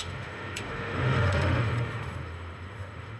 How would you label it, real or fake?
fake